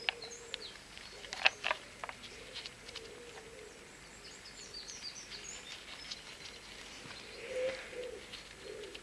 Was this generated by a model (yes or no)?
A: no